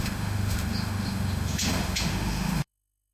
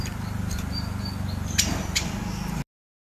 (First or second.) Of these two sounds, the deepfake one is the first